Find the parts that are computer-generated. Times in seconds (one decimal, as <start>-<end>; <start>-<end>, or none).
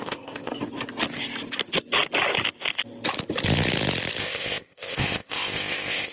0.0-0.5; 4.2-6.1